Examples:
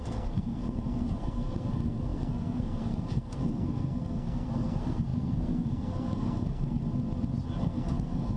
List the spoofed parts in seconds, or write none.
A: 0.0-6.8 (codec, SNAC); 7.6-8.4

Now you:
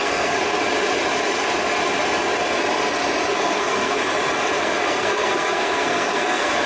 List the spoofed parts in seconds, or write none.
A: 0.0-0.4 (codec, SNAC); 3.3-4.0; 4.6-6.7